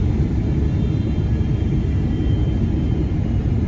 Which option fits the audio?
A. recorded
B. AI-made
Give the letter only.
A